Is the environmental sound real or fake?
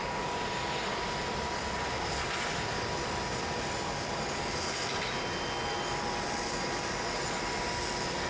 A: real